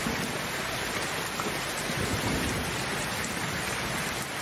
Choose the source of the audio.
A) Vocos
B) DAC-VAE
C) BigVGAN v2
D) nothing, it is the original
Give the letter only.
D